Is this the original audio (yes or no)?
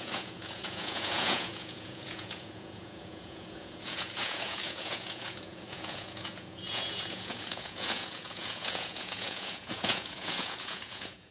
no